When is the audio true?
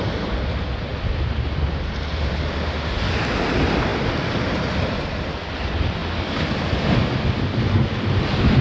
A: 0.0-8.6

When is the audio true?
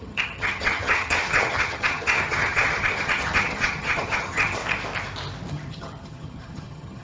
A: 4.6-5.5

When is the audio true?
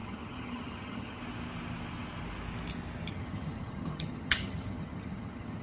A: 1.2-3.1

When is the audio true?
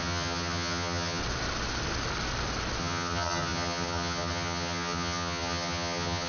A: 1.2-2.8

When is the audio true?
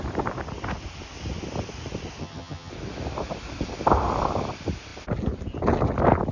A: 0.0-2.2; 2.7-6.3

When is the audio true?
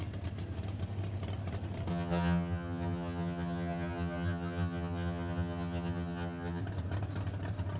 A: 0.0-1.9; 6.6-7.8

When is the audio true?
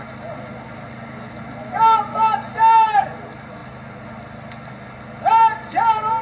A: 0.0-6.2